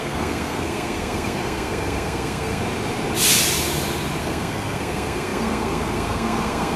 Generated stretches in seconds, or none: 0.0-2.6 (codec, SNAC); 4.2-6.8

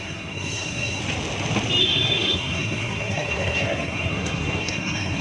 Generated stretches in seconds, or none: 0.0-1.0 (codec, SNAC); 1.8-5.2

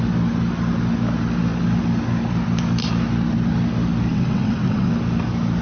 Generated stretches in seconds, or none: 4.1-4.9 (vocoder, WaveNeXt)